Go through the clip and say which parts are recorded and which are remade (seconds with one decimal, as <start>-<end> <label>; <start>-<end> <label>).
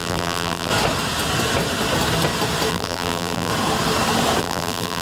0.0-0.7 remade; 0.7-2.7 recorded; 2.7-3.5 remade; 3.5-4.4 recorded; 4.4-5.0 remade